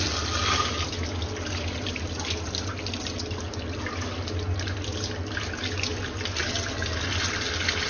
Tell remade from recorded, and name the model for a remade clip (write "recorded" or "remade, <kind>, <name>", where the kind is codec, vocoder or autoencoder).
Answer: recorded